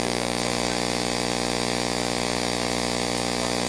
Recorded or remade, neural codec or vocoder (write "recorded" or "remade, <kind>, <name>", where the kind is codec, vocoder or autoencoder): recorded